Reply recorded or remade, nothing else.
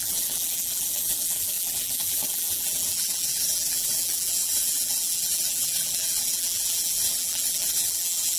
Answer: remade